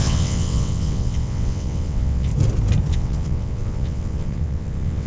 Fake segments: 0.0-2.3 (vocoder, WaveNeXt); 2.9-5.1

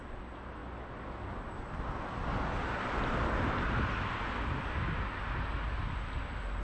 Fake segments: none

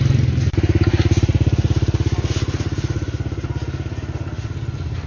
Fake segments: none

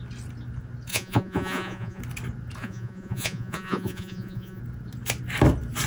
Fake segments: 0.9-2.0 (vocoder, Vocos); 2.6-4.6